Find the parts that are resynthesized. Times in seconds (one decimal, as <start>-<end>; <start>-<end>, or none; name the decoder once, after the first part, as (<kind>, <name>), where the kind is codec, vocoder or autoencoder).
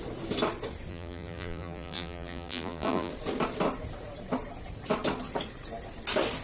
0.9-3.1 (vocoder, BigVGAN v2)